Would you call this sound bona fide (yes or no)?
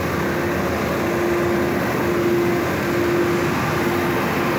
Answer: yes